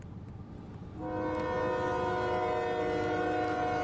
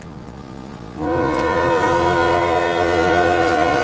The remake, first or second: second